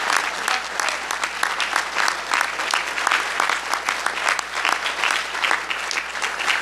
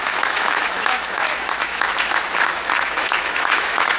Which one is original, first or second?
first